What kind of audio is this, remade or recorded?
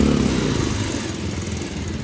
recorded